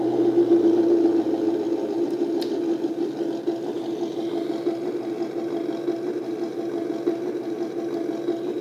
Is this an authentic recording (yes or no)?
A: yes